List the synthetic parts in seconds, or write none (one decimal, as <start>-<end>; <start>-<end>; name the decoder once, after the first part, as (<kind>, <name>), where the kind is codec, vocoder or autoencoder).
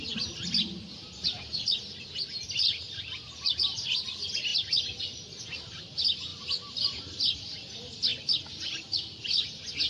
6.3-7.4 (vocoder, BigVGAN v2)